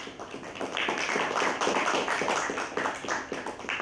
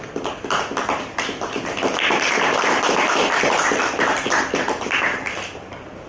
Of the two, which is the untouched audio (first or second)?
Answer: first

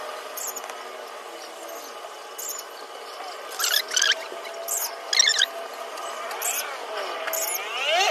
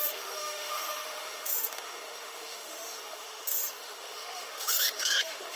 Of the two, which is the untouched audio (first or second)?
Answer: first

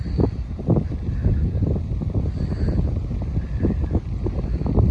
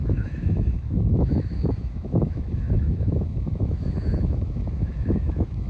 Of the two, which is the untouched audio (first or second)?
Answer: first